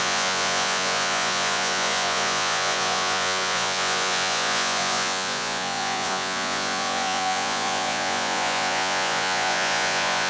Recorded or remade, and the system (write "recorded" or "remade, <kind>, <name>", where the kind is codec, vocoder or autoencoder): remade, vocoder, Vocos